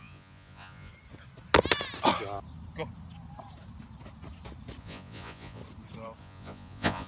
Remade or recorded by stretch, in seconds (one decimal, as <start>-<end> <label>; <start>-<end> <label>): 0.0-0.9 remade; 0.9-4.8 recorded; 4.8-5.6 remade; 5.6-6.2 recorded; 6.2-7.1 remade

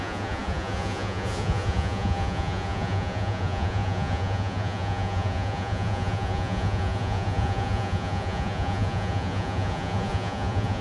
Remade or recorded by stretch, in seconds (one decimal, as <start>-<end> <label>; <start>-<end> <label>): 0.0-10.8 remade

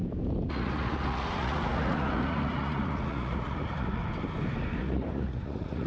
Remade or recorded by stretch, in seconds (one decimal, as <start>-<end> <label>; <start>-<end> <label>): 0.0-0.5 recorded; 0.5-4.0 remade; 4.0-4.8 recorded; 4.8-5.9 remade

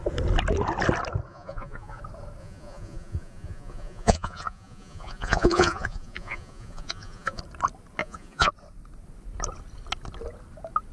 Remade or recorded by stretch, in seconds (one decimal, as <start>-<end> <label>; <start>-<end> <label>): 0.0-1.3 recorded; 1.3-2.0 remade; 2.0-2.4 recorded; 2.4-7.4 remade; 7.4-8.0 recorded; 8.0-8.5 remade; 8.5-10.9 recorded

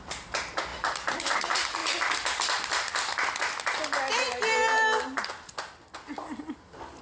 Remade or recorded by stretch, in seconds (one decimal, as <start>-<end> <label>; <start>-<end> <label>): 0.0-7.0 recorded